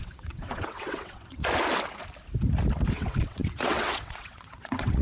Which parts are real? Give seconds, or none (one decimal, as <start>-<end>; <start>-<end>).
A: 1.4-2.9